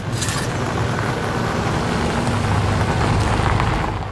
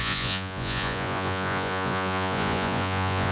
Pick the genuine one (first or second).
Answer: first